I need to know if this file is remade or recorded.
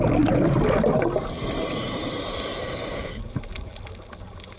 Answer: recorded